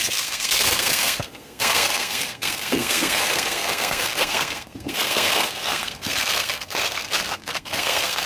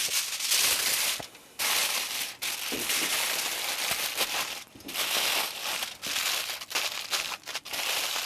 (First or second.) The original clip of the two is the second